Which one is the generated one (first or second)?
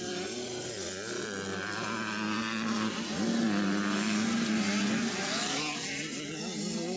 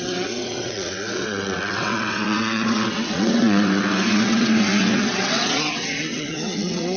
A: second